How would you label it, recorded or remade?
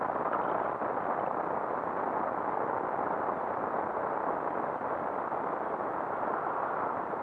recorded